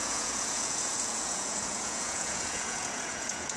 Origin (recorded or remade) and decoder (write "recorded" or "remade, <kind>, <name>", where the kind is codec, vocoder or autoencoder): remade, vocoder, Vocos